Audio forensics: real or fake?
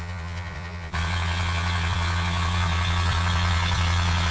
fake